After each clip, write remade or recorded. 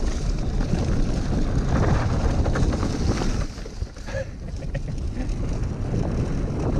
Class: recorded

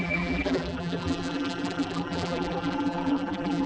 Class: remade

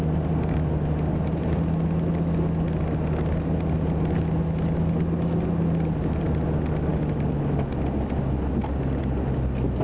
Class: recorded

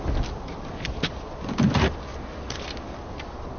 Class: recorded